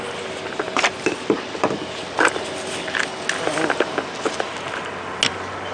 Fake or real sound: real